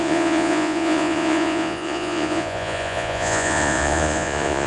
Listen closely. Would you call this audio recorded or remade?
remade